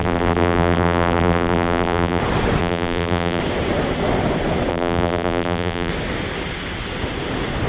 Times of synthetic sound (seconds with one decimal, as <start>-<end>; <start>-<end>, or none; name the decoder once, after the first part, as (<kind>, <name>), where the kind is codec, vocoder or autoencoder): 0.0-2.2 (vocoder, BigVGAN v2); 2.6-3.4; 4.7-5.9